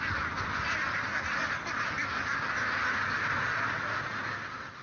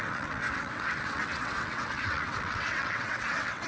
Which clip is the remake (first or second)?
second